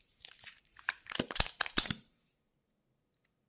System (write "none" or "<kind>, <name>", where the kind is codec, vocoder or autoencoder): vocoder, BigVGAN v2